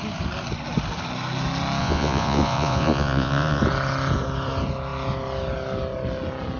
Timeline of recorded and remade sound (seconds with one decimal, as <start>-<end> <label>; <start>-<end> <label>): 0.0-1.8 recorded; 1.8-3.6 remade; 3.6-6.6 recorded